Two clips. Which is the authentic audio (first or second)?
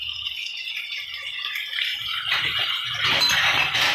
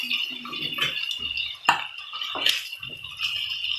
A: second